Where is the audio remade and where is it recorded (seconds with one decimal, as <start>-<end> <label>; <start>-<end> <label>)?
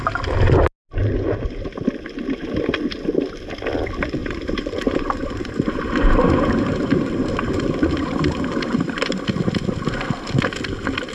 0.0-1.0 recorded; 1.0-1.8 remade; 1.8-4.2 recorded; 4.2-9.2 remade; 9.2-11.1 recorded